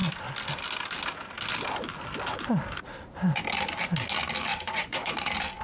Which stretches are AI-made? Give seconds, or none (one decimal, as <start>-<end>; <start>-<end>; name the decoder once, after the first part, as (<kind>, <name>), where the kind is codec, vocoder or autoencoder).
4.5-5.1 (vocoder, Vocos)